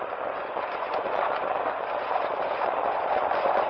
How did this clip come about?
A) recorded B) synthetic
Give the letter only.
B